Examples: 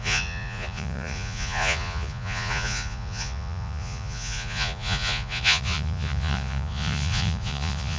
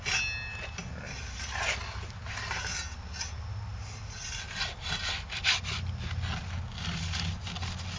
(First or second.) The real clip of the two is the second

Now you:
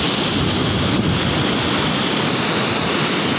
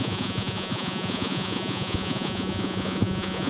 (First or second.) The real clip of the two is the first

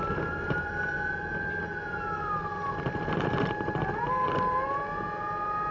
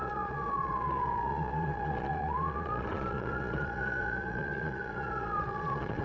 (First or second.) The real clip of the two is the first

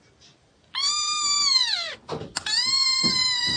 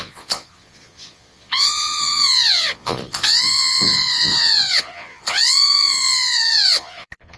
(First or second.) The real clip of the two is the first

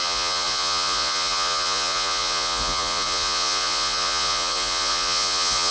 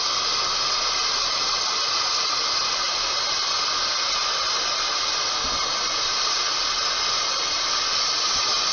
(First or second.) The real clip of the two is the second